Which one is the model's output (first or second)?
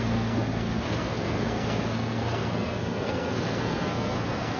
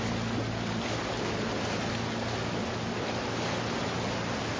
first